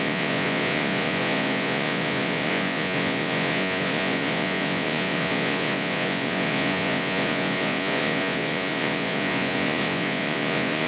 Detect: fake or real fake